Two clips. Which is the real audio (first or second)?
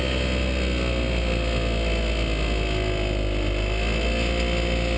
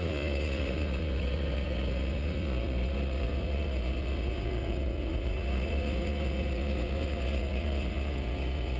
first